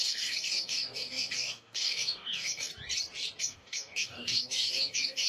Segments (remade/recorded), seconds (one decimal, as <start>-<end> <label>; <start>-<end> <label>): 0.0-2.7 remade; 2.7-3.4 recorded; 3.4-5.3 remade